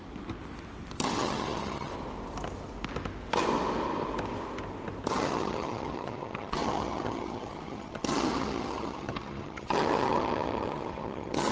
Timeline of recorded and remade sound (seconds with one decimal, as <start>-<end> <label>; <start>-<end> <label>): 0.0-1.0 recorded; 1.0-1.9 remade; 1.9-5.1 recorded; 5.1-11.5 remade